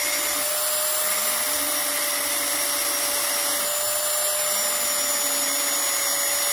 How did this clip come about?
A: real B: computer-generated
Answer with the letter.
A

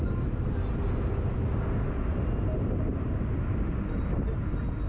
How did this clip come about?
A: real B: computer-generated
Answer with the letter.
A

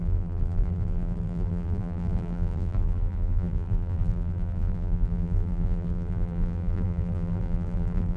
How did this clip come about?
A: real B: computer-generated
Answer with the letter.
B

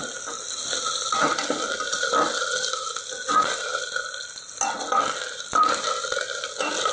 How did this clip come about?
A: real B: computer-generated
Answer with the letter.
A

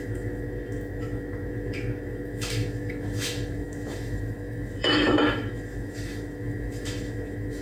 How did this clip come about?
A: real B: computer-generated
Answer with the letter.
B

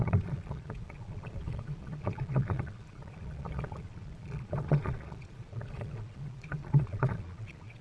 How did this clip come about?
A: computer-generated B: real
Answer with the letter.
A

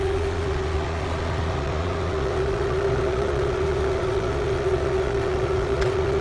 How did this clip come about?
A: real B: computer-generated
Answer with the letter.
B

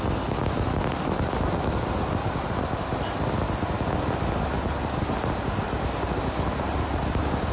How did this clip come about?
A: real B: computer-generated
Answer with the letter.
A